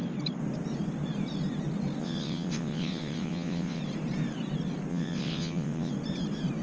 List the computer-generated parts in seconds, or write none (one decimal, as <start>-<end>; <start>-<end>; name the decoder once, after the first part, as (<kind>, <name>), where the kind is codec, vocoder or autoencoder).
2.0-3.8 (vocoder, WaveNeXt); 4.9-5.9